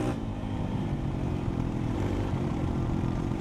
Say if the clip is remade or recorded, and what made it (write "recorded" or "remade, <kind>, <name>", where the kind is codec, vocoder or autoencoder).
remade, vocoder, BigVGAN v2